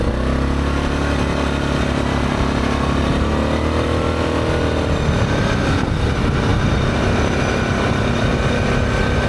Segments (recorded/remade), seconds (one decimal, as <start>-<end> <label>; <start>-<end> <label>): 0.0-9.3 recorded